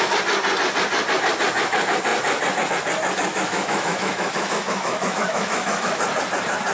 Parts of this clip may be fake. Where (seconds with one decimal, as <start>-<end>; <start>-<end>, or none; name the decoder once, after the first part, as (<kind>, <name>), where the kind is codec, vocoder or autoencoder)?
3.3-6.0 (autoencoder, DAC-VAE)